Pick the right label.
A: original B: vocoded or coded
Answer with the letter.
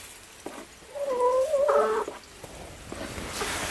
A